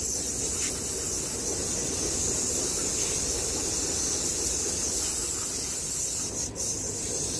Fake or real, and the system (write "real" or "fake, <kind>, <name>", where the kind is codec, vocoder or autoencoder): real